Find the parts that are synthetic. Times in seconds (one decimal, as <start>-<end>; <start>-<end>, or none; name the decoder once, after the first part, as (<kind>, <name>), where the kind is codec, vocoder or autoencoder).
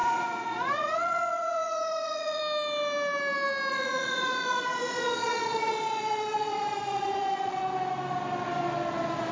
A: 0.0-2.4 (vocoder, Vocos); 3.7-7.6